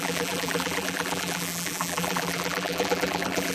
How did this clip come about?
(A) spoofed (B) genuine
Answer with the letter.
A